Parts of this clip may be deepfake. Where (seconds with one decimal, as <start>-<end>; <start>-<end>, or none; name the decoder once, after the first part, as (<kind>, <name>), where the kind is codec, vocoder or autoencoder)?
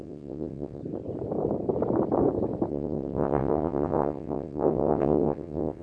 0.0-0.8 (vocoder, WaveNeXt); 2.7-5.8